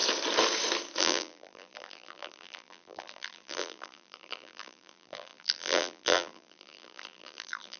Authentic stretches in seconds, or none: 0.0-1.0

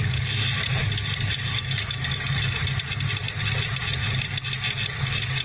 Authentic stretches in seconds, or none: 0.0-1.5; 2.5-5.4

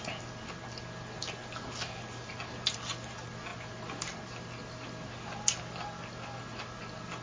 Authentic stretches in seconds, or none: 0.0-7.2

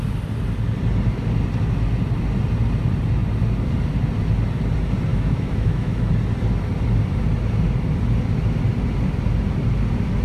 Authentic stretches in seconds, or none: 0.0-5.1; 6.1-10.2

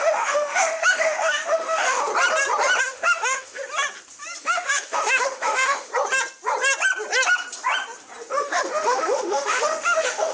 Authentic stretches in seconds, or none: 2.1-2.8; 3.6-4.4; 5.9-8.3

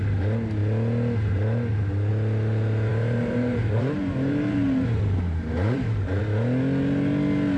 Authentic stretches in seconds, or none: 0.0-2.9; 6.2-7.6